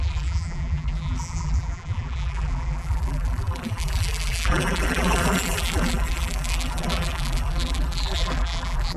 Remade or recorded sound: remade